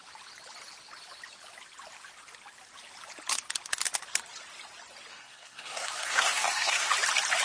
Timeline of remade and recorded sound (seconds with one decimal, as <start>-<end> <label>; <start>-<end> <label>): 0.0-5.1 recorded; 5.1-6.9 remade; 6.9-7.4 recorded